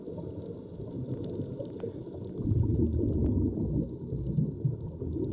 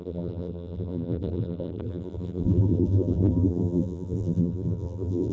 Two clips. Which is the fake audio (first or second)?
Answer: second